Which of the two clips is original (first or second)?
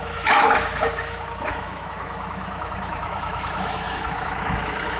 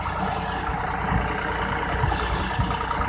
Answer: second